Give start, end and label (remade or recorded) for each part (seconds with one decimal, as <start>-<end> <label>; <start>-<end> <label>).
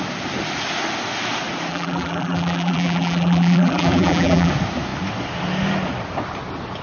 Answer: 0.0-1.7 recorded; 1.7-4.5 remade; 4.5-6.8 recorded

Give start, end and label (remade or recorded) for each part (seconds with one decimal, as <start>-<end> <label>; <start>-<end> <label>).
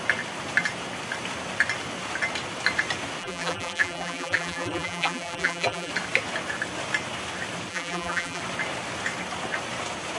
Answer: 0.0-3.2 recorded; 3.2-5.9 remade; 5.9-7.7 recorded; 7.7-8.4 remade; 8.4-10.2 recorded